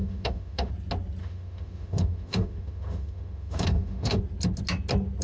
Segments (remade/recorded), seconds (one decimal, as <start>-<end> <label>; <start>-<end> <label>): 0.0-0.7 remade; 0.7-1.2 recorded; 1.2-4.2 remade; 4.2-5.2 recorded